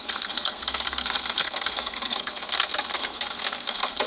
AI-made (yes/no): yes